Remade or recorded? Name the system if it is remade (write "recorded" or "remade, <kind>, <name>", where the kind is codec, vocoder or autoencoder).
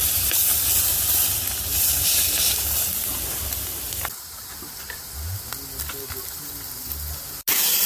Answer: recorded